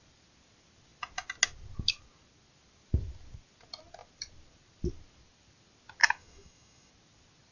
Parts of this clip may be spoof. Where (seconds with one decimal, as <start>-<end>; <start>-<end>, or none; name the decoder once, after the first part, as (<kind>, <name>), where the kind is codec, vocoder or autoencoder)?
6.0-6.9 (autoencoder, DAC-VAE)